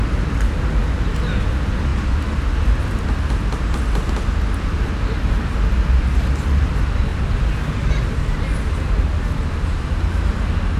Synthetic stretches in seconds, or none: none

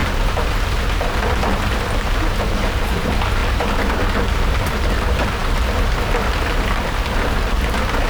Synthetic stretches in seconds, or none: none